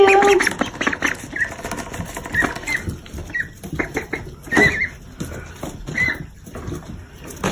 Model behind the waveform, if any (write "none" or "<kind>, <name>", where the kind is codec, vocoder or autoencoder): none